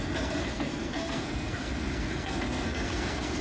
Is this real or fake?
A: fake